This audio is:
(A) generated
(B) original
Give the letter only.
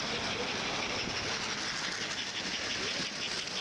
B